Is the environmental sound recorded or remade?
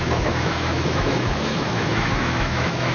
remade